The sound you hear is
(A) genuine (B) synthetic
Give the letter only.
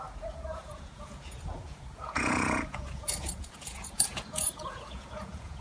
B